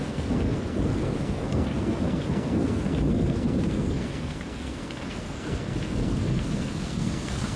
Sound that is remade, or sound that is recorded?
remade